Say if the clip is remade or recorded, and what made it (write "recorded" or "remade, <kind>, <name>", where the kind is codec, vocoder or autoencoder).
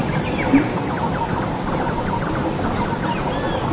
recorded